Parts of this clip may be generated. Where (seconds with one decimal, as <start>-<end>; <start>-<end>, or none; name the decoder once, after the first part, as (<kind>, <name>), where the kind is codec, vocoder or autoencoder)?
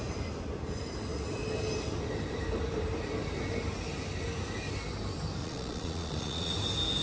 5.4-6.5 (vocoder, Vocos)